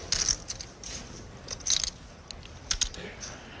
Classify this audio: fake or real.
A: real